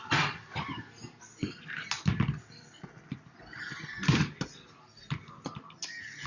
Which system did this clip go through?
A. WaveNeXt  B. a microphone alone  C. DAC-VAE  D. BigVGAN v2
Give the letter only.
B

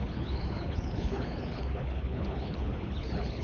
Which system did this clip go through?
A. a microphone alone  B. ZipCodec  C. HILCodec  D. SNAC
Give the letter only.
C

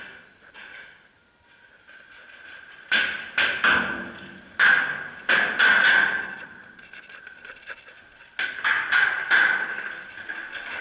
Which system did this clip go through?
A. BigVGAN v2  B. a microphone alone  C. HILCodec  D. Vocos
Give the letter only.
B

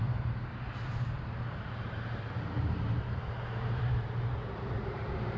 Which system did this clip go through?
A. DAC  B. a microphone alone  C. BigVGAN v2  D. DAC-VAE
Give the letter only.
C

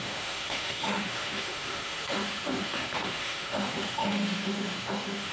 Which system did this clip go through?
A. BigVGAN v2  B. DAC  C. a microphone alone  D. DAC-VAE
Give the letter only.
D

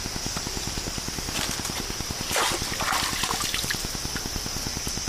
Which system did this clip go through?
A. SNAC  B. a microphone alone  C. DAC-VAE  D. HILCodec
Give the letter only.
B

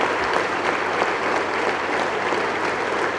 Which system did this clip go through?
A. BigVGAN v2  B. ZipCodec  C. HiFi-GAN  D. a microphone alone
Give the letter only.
D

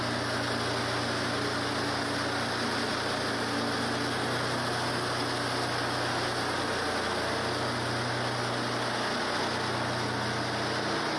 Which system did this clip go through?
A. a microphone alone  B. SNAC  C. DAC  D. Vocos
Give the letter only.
A